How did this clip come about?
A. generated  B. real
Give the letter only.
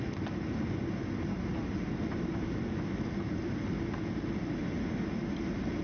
B